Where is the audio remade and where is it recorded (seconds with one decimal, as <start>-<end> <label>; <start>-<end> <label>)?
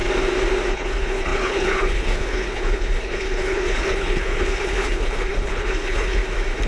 0.0-0.7 recorded; 0.7-6.2 remade; 6.2-6.7 recorded